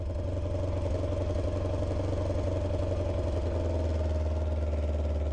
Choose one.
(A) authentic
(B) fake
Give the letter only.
A